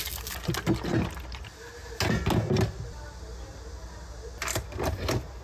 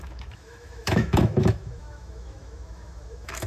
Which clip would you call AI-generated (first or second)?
second